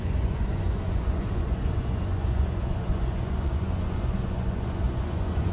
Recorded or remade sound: remade